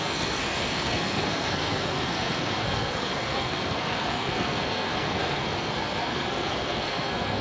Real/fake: fake